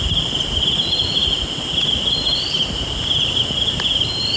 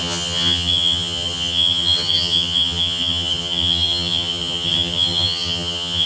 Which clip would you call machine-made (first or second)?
second